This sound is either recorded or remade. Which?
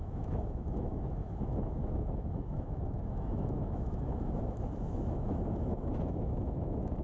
remade